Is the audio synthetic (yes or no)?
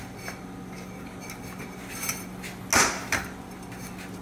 no